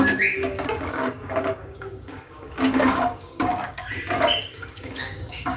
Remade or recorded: remade